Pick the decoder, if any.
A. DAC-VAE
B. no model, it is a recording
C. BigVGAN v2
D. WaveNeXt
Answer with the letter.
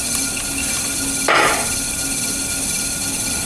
B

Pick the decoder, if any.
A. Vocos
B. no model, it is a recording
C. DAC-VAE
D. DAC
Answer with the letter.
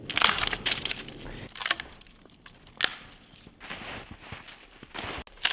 B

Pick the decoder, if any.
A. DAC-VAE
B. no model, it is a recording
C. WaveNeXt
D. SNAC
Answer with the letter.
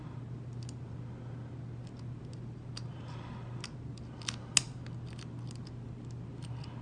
B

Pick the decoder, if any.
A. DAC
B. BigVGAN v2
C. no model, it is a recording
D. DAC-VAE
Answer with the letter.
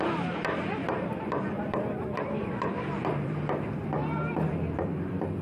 B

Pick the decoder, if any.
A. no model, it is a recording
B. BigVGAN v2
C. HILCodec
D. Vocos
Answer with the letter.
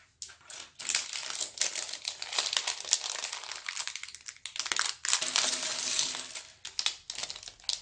A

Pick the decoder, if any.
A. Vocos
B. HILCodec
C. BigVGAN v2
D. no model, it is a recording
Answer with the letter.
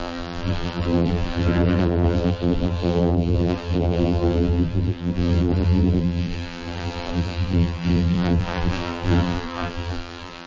C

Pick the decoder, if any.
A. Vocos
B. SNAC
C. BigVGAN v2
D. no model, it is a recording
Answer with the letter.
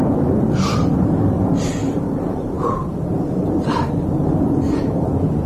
C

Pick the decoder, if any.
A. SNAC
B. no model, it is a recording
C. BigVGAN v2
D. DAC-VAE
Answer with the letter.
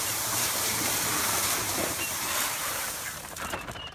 C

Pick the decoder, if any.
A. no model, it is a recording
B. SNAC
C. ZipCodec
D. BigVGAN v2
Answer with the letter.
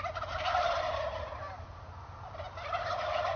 A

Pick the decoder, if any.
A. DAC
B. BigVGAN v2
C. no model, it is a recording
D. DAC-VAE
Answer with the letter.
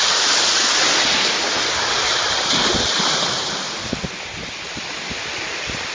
C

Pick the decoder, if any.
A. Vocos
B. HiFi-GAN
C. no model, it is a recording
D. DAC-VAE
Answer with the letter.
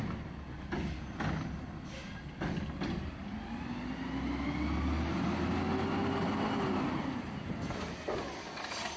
C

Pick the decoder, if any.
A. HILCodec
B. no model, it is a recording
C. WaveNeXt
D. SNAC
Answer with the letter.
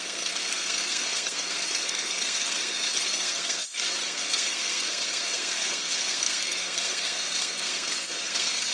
D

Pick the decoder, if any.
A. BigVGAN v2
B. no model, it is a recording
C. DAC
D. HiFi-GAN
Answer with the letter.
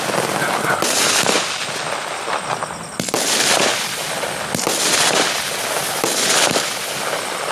B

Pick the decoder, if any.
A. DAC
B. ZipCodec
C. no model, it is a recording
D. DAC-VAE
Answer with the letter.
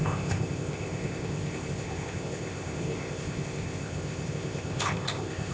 B